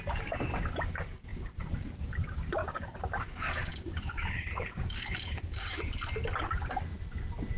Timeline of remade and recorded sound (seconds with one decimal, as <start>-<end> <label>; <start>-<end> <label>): 0.0-2.6 recorded; 2.6-5.8 remade; 5.8-7.6 recorded